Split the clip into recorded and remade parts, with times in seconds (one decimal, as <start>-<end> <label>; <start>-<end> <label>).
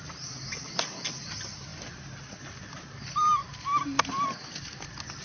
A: 0.0-5.2 recorded